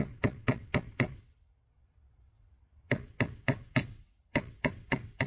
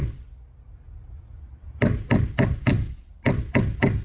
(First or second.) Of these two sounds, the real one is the second